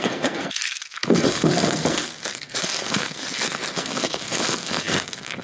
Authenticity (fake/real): fake